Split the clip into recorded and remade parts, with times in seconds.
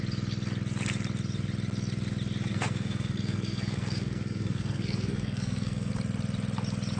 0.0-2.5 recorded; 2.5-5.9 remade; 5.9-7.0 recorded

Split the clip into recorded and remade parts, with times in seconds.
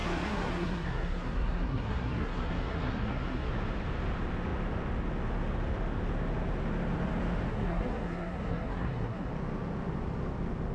0.0-3.5 remade; 3.5-7.5 recorded; 7.5-9.3 remade; 9.3-10.7 recorded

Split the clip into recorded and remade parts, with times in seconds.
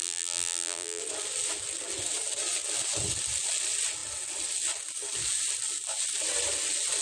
0.0-1.0 remade; 1.0-7.0 recorded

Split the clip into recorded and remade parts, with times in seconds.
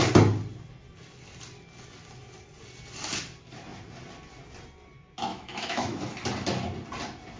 0.0-5.3 recorded; 5.3-6.0 remade; 6.0-7.4 recorded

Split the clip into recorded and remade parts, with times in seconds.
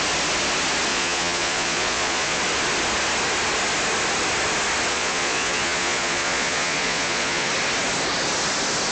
0.0-0.9 recorded; 0.9-2.4 remade; 2.4-4.9 recorded; 4.9-7.5 remade; 7.5-8.9 recorded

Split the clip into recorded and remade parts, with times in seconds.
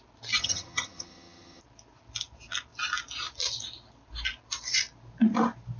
0.0-0.4 recorded; 0.4-1.6 remade; 1.6-5.8 recorded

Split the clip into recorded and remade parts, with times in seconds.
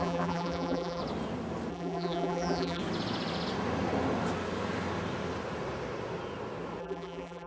0.0-1.0 remade; 1.0-1.7 recorded; 1.7-2.8 remade; 2.8-6.8 recorded; 6.8-7.5 remade